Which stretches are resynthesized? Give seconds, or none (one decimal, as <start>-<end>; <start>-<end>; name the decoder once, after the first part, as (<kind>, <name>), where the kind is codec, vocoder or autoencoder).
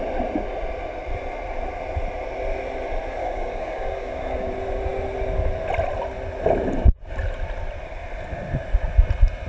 3.2-4.5 (codec, DAC)